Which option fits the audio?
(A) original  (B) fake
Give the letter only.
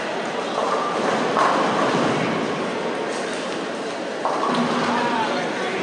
A